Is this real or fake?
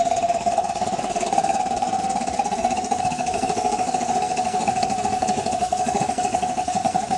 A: fake